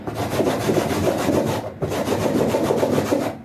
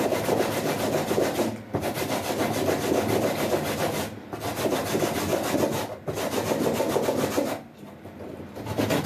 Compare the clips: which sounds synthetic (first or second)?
first